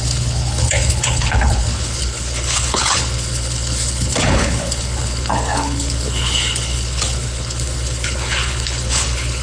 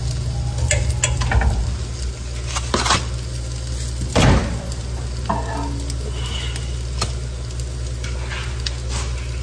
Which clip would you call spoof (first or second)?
first